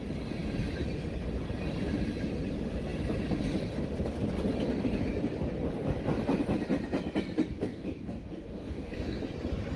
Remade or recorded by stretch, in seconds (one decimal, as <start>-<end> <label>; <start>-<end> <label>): 0.0-7.5 recorded; 7.5-9.2 remade; 9.2-9.8 recorded